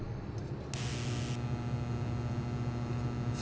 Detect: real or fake real